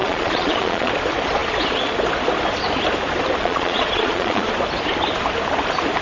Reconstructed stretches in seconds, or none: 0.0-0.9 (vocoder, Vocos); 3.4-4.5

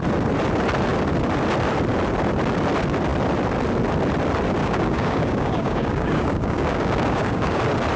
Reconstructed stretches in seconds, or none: 4.6-7.6 (codec, DAC)

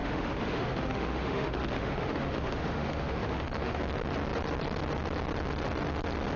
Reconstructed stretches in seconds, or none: 0.0-3.8 (autoencoder, DAC-VAE)

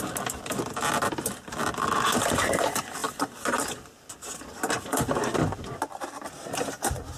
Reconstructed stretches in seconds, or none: none

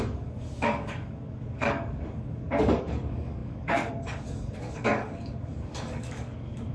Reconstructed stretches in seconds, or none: 0.0-6.7 (codec, DAC)